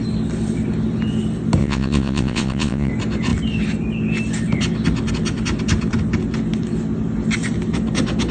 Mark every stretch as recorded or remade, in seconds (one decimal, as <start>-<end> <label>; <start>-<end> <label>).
0.0-1.6 recorded; 1.6-2.9 remade; 2.9-8.3 recorded